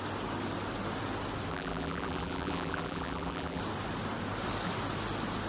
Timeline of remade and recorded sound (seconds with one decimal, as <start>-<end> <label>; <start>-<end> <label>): 0.0-1.5 recorded; 1.5-3.6 remade; 3.6-5.5 recorded